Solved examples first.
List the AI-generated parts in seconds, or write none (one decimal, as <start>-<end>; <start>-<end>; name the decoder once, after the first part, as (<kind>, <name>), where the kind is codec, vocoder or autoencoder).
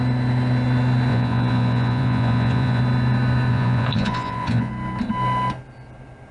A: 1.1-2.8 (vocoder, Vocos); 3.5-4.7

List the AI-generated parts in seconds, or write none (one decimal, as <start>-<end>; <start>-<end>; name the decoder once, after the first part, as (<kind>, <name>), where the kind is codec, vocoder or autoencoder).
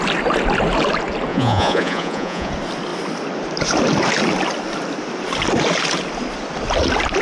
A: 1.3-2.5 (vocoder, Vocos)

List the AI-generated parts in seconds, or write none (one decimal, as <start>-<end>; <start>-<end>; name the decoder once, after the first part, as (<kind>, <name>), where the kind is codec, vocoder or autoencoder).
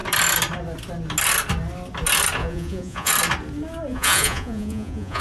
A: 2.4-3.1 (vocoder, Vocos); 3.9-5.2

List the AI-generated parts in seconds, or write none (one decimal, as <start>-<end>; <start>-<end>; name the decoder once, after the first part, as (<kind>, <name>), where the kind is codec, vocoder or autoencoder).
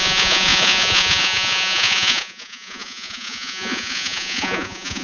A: 0.0-5.0 (vocoder, Vocos)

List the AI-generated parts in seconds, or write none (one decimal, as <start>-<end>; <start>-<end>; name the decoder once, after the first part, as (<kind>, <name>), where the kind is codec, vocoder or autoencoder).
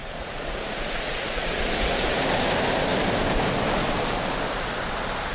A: 0.0-2.4 (vocoder, Vocos)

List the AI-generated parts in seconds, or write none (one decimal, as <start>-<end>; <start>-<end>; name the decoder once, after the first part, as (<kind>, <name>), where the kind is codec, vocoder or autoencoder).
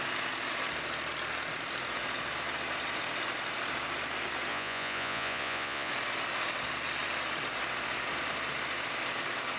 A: 4.5-5.9 (vocoder, Vocos)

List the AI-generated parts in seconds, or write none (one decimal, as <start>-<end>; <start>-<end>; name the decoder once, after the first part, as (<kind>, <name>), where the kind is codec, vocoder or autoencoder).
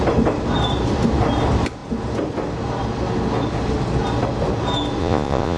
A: 5.0-5.6 (vocoder, Vocos)